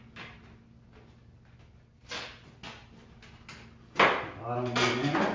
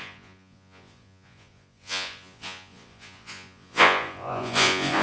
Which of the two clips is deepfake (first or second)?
second